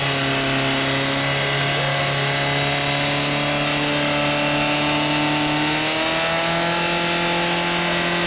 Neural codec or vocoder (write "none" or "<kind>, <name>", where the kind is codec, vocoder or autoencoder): none